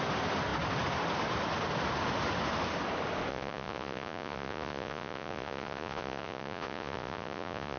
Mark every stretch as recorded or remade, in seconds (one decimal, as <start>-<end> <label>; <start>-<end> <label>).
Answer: 0.0-3.3 recorded; 3.3-7.8 remade

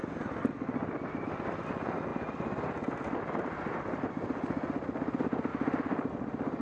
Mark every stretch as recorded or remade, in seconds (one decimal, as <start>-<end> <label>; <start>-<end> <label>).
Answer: 0.0-6.6 recorded

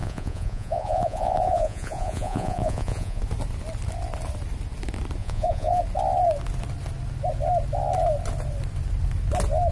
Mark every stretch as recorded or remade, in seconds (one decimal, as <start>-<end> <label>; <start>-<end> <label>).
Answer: 0.0-3.2 remade; 3.2-5.2 recorded; 5.2-5.8 remade; 5.8-9.7 recorded

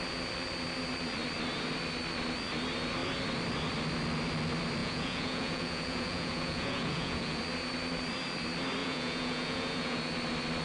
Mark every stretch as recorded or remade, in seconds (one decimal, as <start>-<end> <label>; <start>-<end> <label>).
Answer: 0.0-4.8 recorded; 4.8-7.4 remade; 7.4-8.8 recorded; 8.8-10.0 remade; 10.0-10.6 recorded

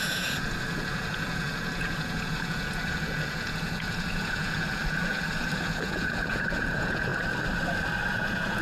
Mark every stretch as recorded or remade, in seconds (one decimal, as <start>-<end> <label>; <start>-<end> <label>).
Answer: 0.0-7.1 remade; 7.1-8.1 recorded; 8.1-8.6 remade

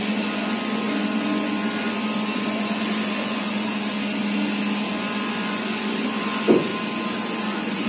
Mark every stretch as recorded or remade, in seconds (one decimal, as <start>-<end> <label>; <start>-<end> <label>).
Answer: 0.0-3.7 remade; 3.7-4.9 recorded; 4.9-6.7 remade; 6.7-7.4 recorded; 7.4-7.9 remade

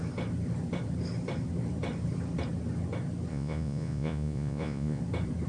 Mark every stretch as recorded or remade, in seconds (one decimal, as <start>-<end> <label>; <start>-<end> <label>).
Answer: 0.0-3.3 recorded; 3.3-5.0 remade; 5.0-5.5 recorded